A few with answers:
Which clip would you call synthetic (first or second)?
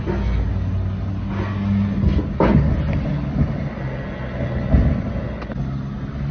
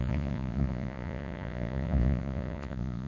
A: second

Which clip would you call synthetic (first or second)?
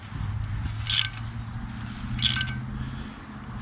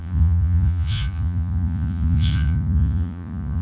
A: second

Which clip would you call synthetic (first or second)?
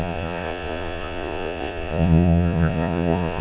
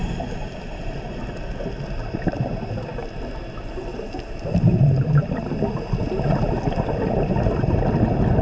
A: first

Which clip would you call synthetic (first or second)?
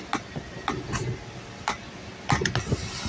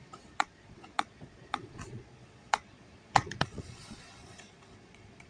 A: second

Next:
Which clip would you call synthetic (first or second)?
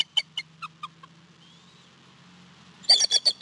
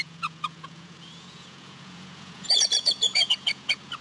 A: second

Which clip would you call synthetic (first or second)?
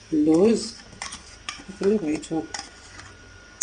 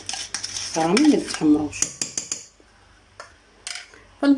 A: first